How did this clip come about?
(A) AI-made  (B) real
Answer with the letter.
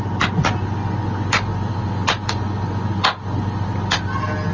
B